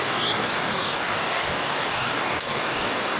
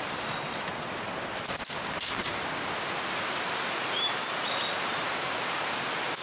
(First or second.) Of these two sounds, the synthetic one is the first